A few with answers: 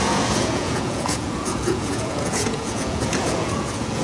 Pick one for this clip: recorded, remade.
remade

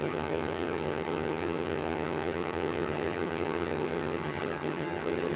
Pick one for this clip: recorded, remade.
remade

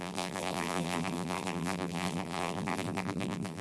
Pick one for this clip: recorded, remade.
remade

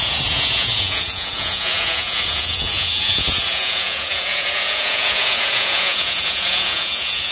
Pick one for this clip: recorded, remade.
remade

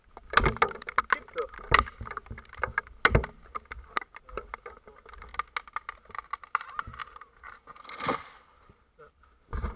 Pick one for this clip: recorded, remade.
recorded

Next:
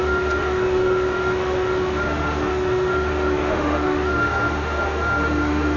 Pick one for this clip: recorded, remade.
remade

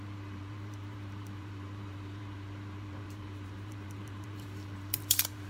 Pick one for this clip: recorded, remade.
remade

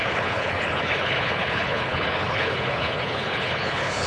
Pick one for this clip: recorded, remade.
remade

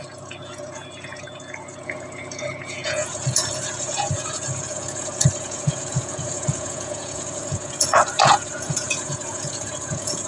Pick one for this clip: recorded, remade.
remade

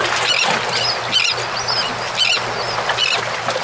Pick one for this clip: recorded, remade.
recorded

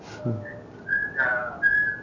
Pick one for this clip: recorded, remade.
recorded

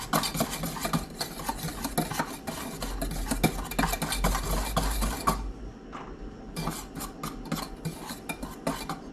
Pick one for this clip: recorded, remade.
recorded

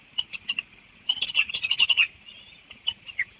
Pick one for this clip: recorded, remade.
remade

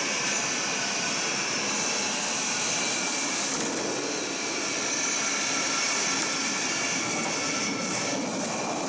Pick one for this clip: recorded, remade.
recorded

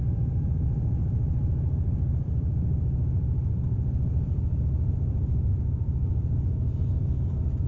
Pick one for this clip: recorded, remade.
remade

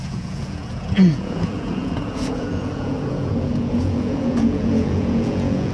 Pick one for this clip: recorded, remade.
remade